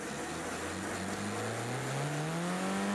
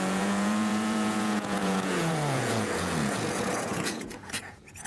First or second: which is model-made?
second